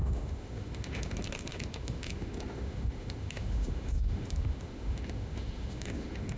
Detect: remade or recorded remade